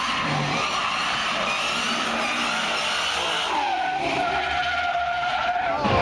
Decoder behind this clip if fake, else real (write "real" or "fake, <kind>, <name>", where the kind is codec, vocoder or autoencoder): real